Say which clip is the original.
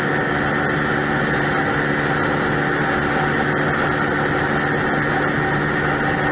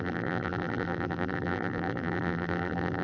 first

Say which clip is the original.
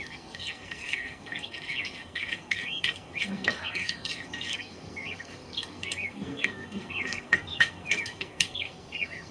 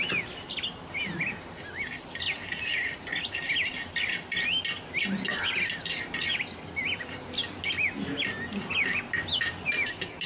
second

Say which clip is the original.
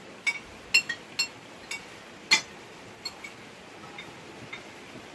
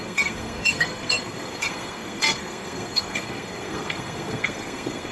first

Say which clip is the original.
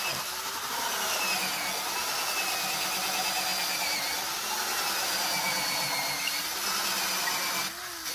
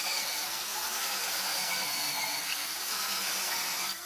first